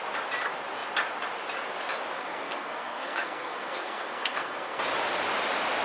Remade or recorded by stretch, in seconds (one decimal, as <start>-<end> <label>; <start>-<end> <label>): 0.0-2.2 recorded; 2.2-4.8 remade; 4.8-5.8 recorded